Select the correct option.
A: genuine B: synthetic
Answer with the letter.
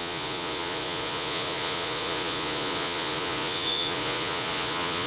B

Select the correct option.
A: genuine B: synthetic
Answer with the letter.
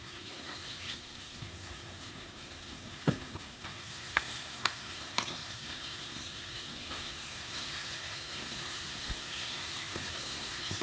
B